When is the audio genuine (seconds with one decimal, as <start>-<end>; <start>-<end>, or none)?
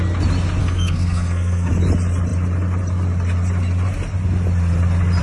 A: 0.0-0.6; 1.7-5.2